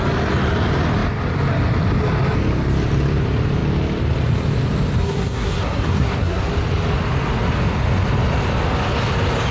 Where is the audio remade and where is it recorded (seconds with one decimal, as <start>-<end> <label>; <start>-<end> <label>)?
0.0-5.0 recorded; 5.0-6.4 remade; 6.4-9.5 recorded